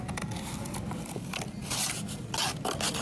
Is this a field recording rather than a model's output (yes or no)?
yes